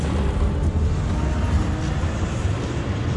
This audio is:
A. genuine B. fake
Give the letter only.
A